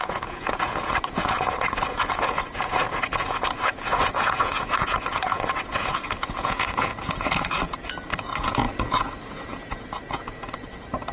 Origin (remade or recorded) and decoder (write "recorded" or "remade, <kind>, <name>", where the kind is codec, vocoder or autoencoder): remade, vocoder, Vocos